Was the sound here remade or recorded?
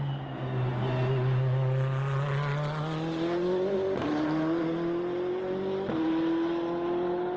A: recorded